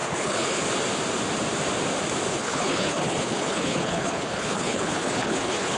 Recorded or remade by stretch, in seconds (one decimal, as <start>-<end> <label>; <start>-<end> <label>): 0.0-0.6 remade; 0.6-2.3 recorded; 2.3-5.8 remade